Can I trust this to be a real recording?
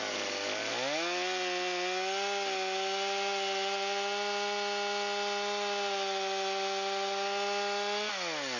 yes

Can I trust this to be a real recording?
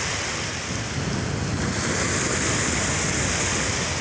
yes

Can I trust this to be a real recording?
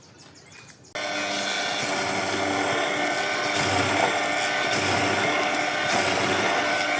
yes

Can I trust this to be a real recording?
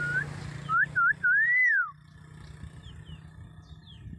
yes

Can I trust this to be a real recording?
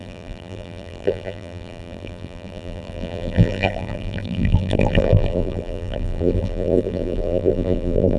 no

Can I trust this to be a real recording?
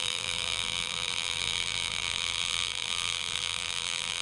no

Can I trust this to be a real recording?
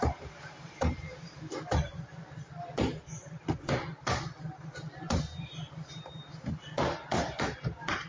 no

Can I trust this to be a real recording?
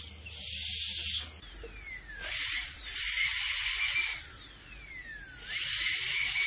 yes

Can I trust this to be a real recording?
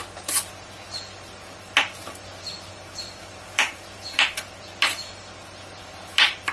no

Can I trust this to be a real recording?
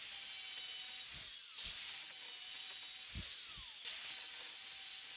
yes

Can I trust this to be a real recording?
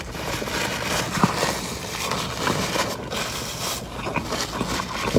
yes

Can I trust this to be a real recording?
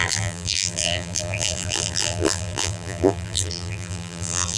no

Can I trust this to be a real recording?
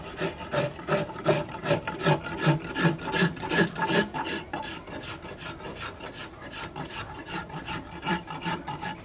no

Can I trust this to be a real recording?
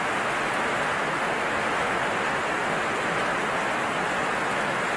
yes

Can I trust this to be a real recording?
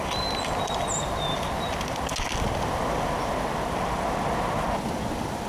yes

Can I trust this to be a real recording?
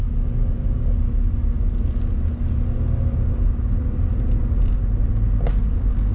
yes